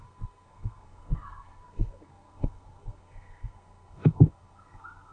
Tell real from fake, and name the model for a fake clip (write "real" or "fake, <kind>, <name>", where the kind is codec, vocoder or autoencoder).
fake, codec, SNAC